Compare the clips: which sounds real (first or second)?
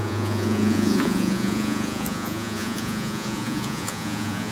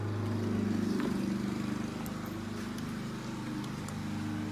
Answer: second